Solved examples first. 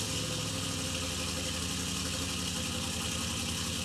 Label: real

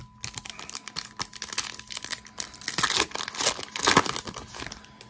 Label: real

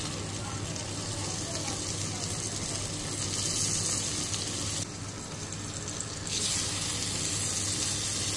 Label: real